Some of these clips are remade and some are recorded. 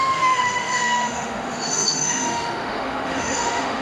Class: remade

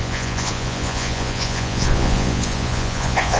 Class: remade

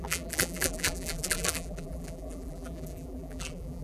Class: remade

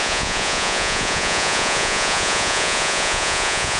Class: remade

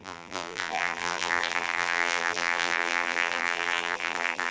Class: remade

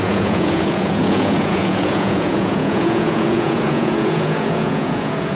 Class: remade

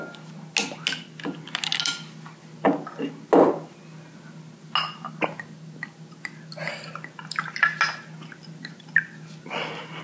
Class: recorded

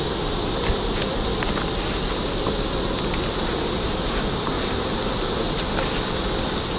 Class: recorded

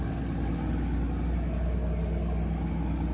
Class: recorded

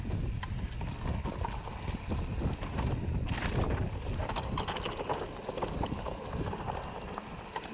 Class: recorded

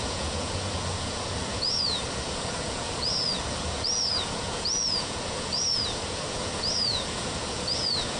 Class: remade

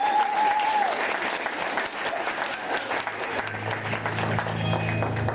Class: recorded